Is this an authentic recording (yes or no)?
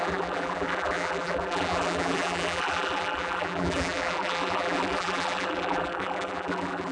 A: no